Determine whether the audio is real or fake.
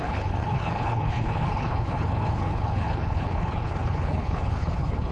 fake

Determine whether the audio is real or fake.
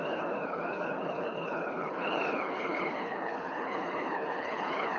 fake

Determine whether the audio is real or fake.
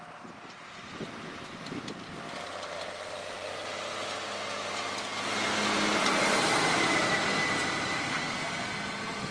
real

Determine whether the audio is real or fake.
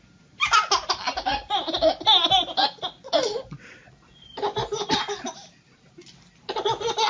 real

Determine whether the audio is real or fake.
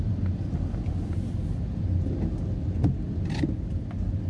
real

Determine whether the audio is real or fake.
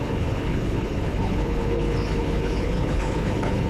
fake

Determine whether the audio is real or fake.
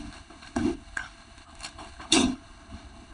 fake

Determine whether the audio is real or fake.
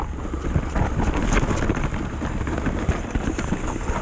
real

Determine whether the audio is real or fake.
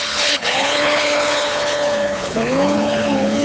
fake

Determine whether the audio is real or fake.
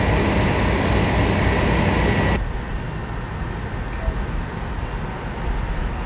real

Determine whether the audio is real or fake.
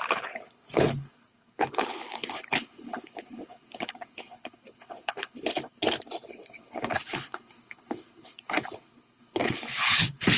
fake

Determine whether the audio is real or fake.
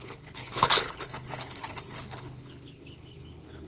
fake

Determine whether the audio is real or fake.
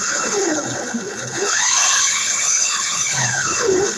fake